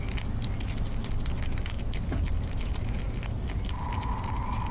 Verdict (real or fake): real